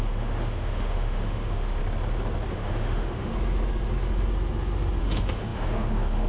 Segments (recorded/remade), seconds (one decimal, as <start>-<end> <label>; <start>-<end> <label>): 0.0-1.8 remade; 1.8-2.5 recorded; 2.5-3.3 remade; 3.3-5.0 recorded; 5.0-6.3 remade